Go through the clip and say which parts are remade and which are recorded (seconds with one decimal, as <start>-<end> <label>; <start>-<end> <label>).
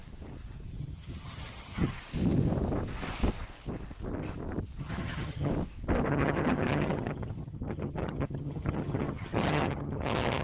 0.0-0.8 recorded; 0.8-1.9 remade; 1.9-4.8 recorded; 4.8-5.5 remade; 5.5-6.1 recorded; 6.1-10.4 remade